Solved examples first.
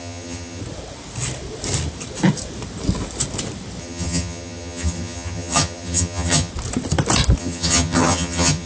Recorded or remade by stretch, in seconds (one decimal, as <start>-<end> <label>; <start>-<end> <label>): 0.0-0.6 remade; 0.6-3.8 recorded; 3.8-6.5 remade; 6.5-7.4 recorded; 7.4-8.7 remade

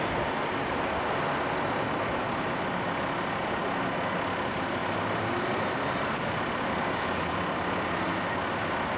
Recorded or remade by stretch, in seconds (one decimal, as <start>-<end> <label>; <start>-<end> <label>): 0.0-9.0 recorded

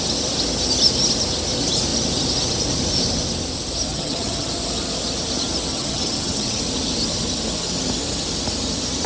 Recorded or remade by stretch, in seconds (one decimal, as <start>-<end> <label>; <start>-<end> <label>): 0.0-3.9 recorded; 3.9-4.5 remade; 4.5-5.7 recorded; 5.7-6.6 remade; 6.6-9.1 recorded

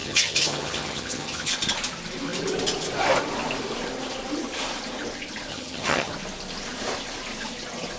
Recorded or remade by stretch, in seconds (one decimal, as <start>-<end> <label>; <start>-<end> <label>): 0.0-1.5 remade; 1.5-5.5 recorded; 5.5-6.1 remade; 6.1-8.0 recorded